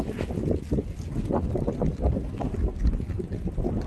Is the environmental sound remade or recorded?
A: recorded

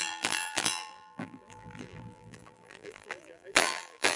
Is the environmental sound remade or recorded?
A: remade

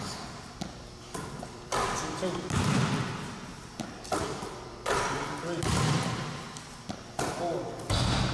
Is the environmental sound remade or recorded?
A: remade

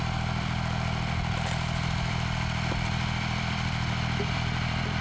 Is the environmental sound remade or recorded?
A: remade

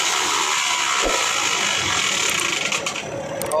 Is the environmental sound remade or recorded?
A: recorded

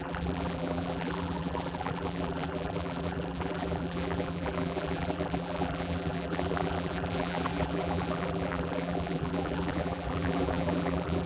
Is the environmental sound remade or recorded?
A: remade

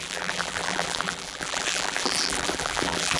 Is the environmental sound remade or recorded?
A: remade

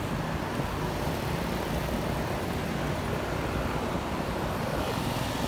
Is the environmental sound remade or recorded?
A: remade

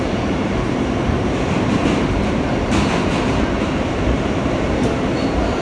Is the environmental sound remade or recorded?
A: remade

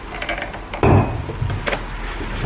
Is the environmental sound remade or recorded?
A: recorded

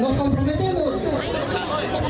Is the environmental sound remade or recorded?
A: remade